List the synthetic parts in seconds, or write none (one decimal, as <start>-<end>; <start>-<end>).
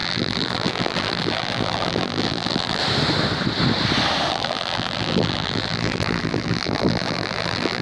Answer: 0.0-2.8; 4.3-7.8